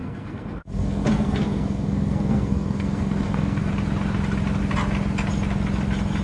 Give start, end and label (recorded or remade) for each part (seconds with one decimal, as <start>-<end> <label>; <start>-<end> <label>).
0.0-3.7 remade; 3.7-6.2 recorded